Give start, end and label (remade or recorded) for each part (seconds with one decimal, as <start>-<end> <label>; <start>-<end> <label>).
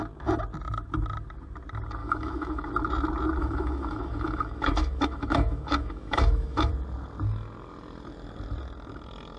0.0-2.0 recorded; 2.0-2.7 remade; 2.7-3.4 recorded; 3.4-6.7 remade; 6.7-9.4 recorded